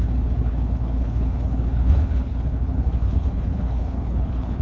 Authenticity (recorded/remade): remade